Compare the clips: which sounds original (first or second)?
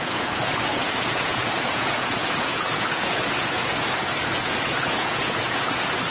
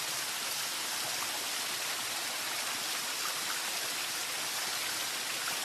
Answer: second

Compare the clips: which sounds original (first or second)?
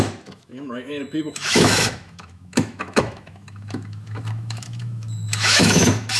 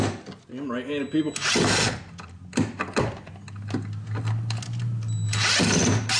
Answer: second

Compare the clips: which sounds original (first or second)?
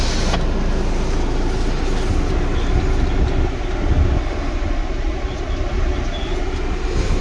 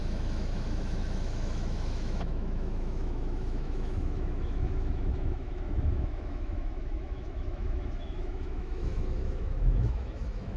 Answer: first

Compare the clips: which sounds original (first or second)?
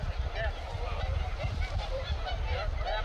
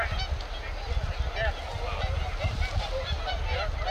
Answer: second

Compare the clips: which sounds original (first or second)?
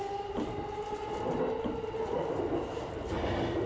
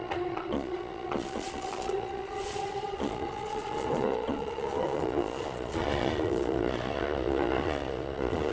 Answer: first